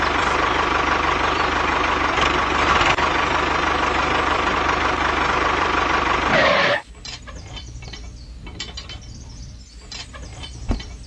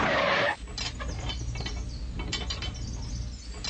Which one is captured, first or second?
second